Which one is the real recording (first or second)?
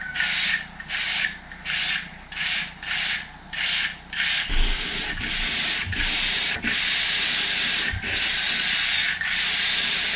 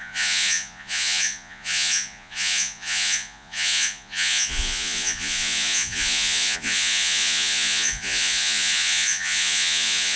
first